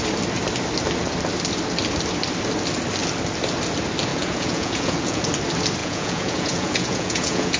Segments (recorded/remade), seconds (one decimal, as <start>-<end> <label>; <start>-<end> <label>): 0.0-4.1 recorded; 4.1-5.2 remade; 5.2-5.8 recorded; 5.8-7.6 remade